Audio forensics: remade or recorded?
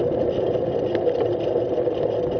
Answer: recorded